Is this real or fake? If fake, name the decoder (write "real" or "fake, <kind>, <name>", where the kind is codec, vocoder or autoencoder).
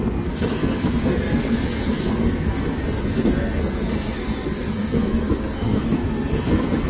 fake, codec, SNAC